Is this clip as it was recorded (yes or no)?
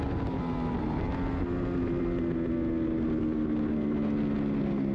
yes